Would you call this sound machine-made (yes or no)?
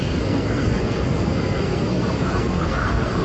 yes